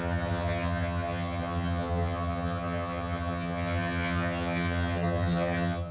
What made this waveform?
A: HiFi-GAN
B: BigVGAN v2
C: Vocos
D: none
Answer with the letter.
A